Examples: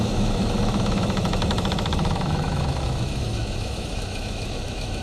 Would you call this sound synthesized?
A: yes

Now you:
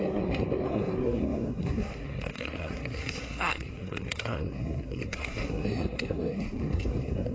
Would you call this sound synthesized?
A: yes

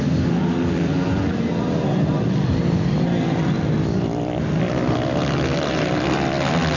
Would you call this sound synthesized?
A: no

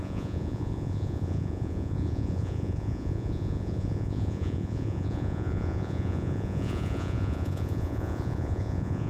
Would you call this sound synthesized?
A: yes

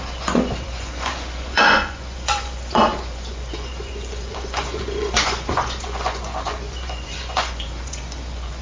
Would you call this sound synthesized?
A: yes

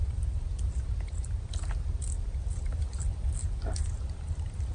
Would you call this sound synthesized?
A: no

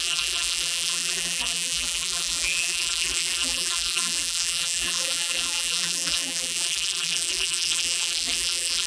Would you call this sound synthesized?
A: yes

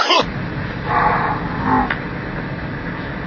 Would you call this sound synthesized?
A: no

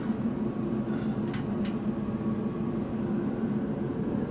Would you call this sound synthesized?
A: no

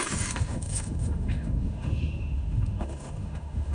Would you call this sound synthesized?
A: yes